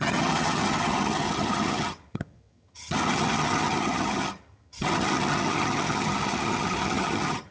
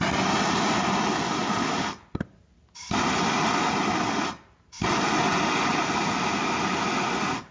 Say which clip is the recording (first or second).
second